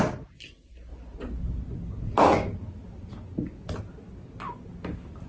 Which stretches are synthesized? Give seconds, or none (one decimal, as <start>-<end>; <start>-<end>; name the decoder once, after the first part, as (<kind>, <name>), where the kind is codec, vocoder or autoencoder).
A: none